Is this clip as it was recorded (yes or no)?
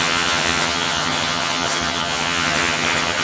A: no